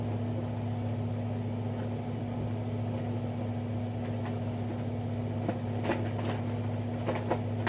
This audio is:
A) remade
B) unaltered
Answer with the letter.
B